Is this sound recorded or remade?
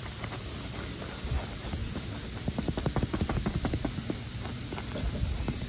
recorded